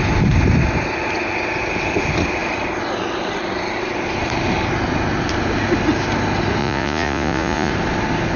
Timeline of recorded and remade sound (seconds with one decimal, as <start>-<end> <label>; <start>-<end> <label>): 0.0-6.6 recorded; 6.6-7.7 remade; 7.7-8.4 recorded